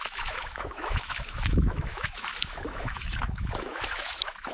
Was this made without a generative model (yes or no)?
no